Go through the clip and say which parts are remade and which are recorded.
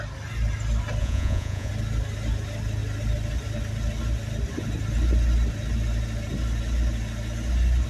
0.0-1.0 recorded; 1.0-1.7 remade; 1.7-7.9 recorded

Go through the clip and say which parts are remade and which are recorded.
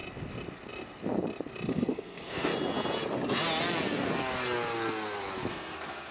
0.0-1.7 recorded; 1.7-2.5 remade; 2.5-5.5 recorded; 5.5-6.1 remade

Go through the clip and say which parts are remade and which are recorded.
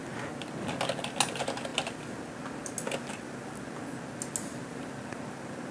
0.0-5.7 recorded